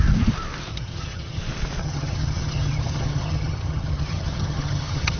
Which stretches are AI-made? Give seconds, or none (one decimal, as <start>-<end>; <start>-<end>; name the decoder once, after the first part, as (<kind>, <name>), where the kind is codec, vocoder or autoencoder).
0.7-1.4 (vocoder, HiFi-GAN); 1.8-5.2